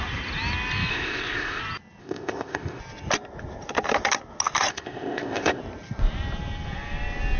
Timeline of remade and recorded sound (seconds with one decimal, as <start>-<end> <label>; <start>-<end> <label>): 0.0-0.9 recorded; 0.9-1.6 remade; 1.6-2.0 recorded; 2.0-2.8 remade; 2.8-4.7 recorded; 4.7-5.6 remade; 5.6-7.4 recorded